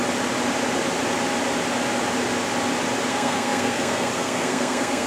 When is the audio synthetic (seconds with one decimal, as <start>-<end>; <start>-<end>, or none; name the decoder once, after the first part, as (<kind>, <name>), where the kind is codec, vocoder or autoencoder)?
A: 3.1-5.1 (codec, SNAC)